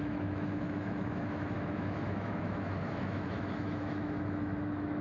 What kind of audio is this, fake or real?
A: fake